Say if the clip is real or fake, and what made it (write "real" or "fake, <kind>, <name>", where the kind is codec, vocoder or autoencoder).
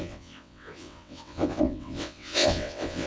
fake, vocoder, WaveNeXt